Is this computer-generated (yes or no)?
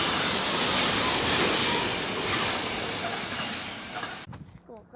no